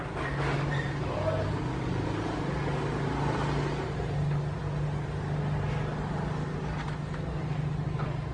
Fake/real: real